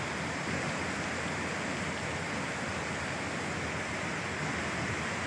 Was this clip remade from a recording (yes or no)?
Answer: no